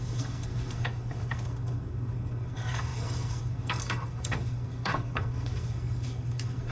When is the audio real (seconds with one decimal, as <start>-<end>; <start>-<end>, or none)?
none